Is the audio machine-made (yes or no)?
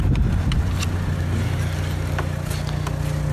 no